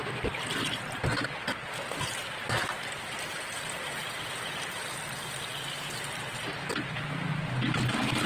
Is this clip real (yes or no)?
yes